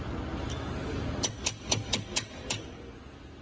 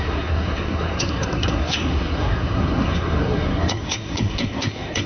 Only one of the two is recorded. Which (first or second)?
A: first